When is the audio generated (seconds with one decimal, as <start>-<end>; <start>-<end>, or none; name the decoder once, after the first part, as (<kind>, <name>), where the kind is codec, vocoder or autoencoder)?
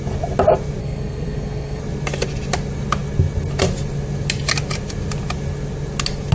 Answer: 0.8-1.8 (codec, SNAC)